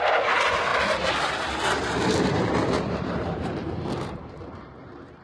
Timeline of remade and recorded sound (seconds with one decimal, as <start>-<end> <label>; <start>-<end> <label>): 0.0-0.7 remade; 0.7-1.7 recorded; 1.7-5.2 remade